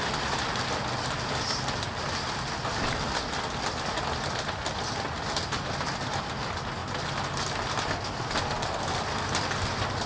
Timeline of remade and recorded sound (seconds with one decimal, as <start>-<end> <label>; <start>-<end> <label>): 0.0-10.1 recorded